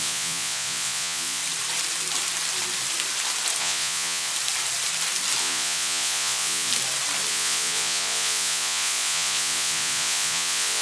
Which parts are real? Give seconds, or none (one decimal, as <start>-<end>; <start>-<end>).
1.4-3.6; 4.3-5.4; 6.7-7.3